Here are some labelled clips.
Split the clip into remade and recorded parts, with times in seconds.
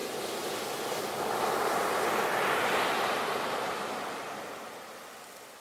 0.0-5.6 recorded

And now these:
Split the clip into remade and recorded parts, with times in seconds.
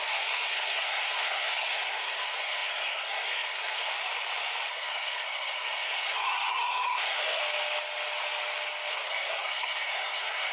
0.0-3.9 remade; 3.9-4.7 recorded; 4.7-7.4 remade; 7.4-8.9 recorded; 8.9-10.5 remade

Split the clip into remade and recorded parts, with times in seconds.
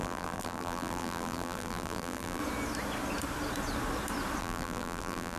0.0-2.4 remade; 2.4-4.4 recorded; 4.4-5.4 remade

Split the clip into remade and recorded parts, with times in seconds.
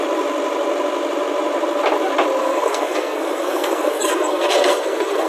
0.0-2.4 recorded; 2.4-5.3 remade